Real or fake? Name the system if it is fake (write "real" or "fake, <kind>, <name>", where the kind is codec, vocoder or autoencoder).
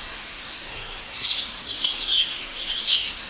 fake, codec, SNAC